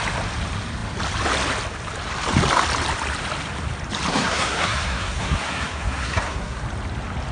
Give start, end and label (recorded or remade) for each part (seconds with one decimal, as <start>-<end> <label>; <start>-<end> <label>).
0.0-4.1 recorded; 4.1-6.6 remade; 6.6-7.3 recorded